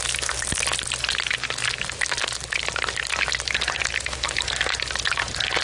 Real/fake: real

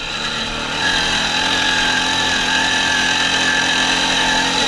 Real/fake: real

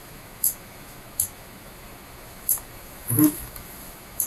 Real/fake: fake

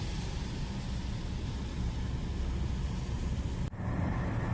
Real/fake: real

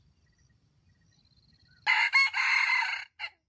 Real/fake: real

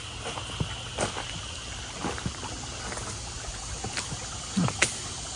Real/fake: real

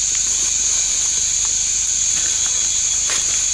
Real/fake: real